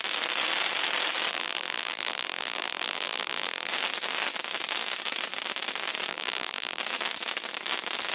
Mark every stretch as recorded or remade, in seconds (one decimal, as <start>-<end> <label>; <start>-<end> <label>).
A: 0.0-1.3 recorded; 1.3-3.7 remade; 3.7-6.1 recorded; 6.1-6.8 remade; 6.8-8.1 recorded